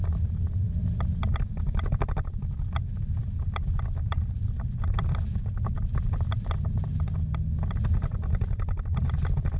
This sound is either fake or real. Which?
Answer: real